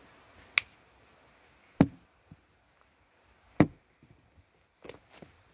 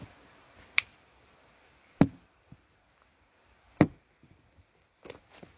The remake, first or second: second